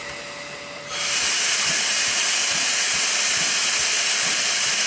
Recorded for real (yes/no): yes